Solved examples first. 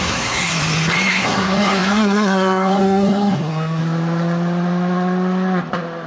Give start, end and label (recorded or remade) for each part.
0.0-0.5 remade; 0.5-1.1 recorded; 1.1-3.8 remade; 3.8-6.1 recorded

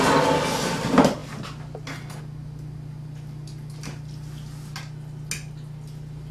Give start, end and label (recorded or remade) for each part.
0.0-6.3 recorded

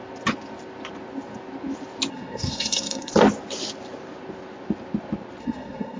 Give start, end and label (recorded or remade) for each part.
0.0-2.1 recorded; 2.1-3.1 remade; 3.1-5.4 recorded; 5.4-6.0 remade

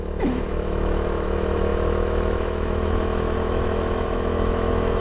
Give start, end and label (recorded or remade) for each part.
0.0-5.0 remade

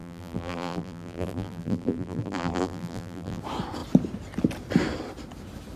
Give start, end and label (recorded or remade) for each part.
0.0-3.4 remade; 3.4-5.8 recorded

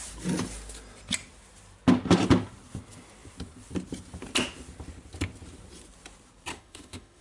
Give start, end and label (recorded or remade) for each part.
0.0-6.5 recorded; 6.5-7.2 remade